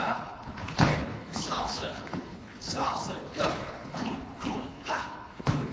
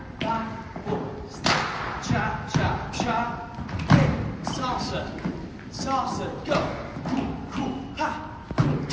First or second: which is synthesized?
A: first